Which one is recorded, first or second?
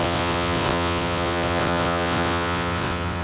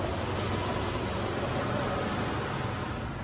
second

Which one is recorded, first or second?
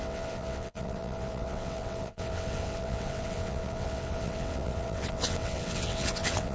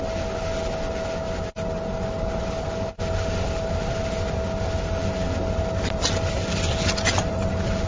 second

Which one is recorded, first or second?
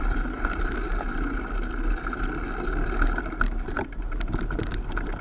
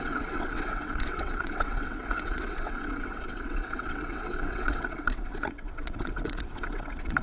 first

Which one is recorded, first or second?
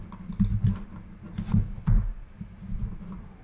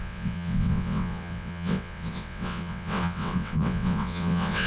first